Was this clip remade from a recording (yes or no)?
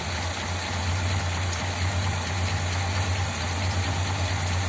no